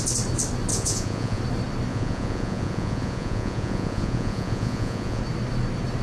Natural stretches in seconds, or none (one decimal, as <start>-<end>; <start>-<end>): 0.0-0.7; 1.4-1.9; 5.2-6.0